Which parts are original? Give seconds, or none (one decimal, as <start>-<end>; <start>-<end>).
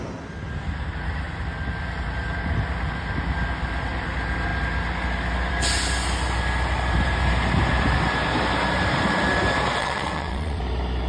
0.0-9.8; 10.6-11.1